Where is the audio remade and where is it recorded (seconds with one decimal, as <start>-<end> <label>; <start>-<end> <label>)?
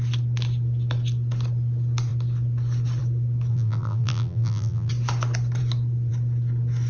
0.0-3.5 recorded; 3.5-4.9 remade; 4.9-6.9 recorded